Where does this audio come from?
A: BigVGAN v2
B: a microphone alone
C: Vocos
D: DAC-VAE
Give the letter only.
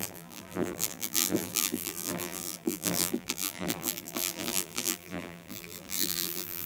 A